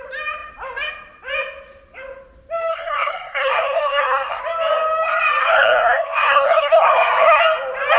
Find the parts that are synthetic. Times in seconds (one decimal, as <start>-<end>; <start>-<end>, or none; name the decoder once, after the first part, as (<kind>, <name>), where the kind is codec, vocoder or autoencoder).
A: 2.7-4.4 (codec, SNAC); 5.4-7.4